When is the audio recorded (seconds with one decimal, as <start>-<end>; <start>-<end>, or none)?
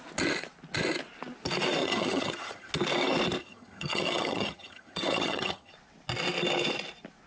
0.0-1.8; 2.7-3.4; 5.7-7.3